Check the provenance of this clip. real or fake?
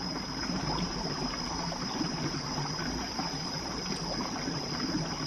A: real